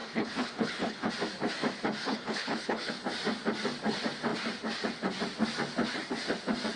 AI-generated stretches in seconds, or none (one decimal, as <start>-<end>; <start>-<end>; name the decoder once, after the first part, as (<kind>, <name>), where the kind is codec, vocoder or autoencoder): 0.0-1.1 (codec, HILCodec); 2.0-2.9